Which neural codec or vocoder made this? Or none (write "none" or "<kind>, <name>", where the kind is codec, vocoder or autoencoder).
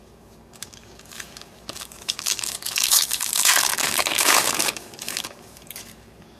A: codec, DAC